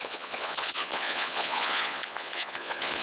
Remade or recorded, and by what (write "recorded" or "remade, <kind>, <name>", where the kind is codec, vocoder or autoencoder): remade, vocoder, Vocos